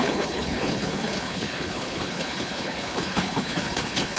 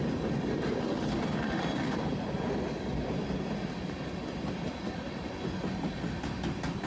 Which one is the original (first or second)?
second